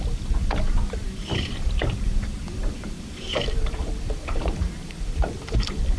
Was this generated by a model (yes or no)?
yes